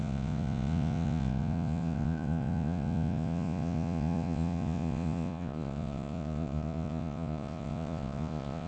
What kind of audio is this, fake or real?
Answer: fake